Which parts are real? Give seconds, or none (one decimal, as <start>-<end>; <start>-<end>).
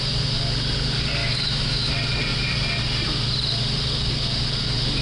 0.0-1.2; 1.9-5.0